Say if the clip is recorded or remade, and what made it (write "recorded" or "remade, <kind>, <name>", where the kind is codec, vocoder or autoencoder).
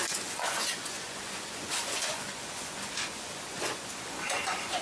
remade, vocoder, Vocos